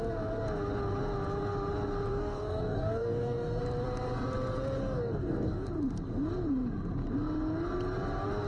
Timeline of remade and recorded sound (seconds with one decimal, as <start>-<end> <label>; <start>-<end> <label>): 0.0-2.1 recorded; 2.1-3.6 remade; 3.6-4.8 recorded; 4.8-5.7 remade; 5.7-8.5 recorded